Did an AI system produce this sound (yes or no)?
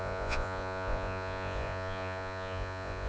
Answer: yes